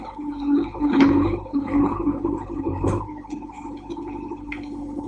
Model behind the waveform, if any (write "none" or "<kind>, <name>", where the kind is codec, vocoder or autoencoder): codec, HILCodec